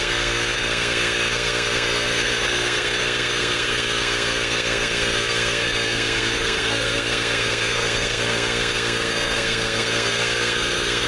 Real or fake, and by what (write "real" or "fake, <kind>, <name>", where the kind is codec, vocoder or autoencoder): fake, codec, SNAC